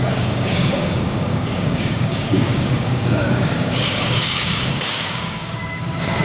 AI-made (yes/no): yes